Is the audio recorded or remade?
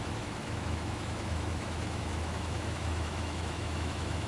remade